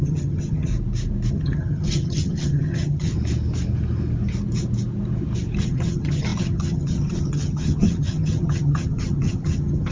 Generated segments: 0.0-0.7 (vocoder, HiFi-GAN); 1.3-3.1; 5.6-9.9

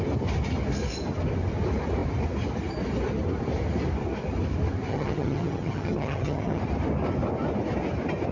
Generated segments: 4.9-6.6 (vocoder, HiFi-GAN)

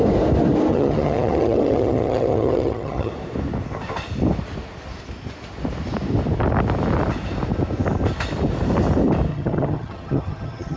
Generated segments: 0.7-3.1 (vocoder, HiFi-GAN); 9.3-10.8

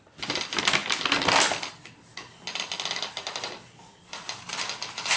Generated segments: none

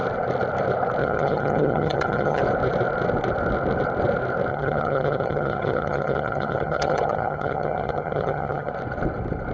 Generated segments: 1.0-2.4 (vocoder, HiFi-GAN); 4.5-8.7